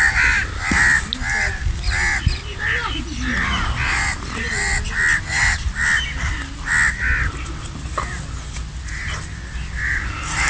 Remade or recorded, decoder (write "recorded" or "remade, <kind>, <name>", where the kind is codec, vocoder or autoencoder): recorded